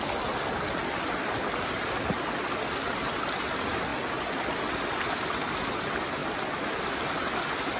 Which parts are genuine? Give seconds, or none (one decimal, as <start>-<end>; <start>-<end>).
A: 0.0-7.8